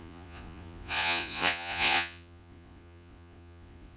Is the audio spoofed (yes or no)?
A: yes